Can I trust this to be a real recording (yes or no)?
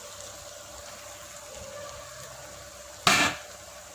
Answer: yes